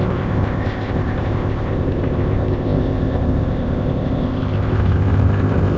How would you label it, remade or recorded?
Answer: remade